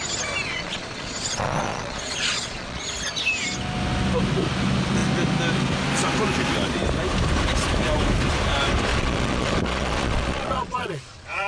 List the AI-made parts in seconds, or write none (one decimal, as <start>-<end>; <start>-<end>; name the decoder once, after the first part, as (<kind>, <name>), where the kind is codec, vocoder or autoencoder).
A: 0.5-2.8 (vocoder, Vocos); 8.9-11.5